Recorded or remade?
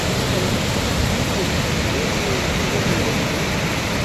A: recorded